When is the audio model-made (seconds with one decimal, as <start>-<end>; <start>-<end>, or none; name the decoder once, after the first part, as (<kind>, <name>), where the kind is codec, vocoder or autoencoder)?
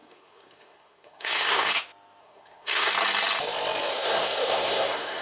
0.0-1.7 (codec, SNAC); 2.2-2.9; 3.9-5.2